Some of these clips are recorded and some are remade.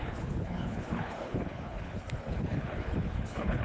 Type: remade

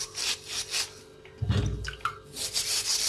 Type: recorded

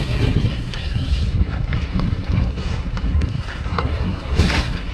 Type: remade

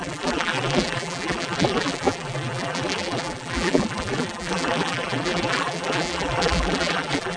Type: remade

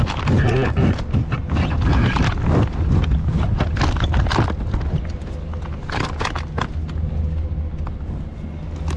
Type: recorded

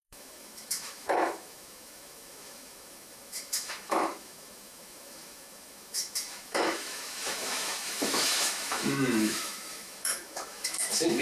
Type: remade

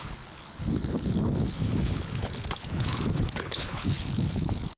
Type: remade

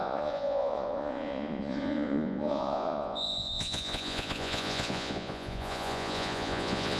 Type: remade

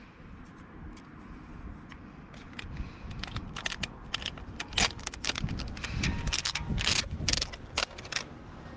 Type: recorded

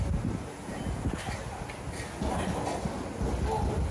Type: recorded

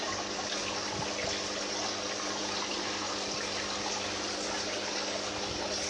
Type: recorded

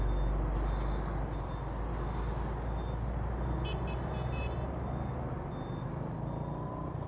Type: recorded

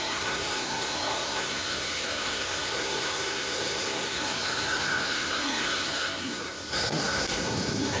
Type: remade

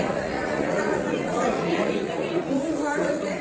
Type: remade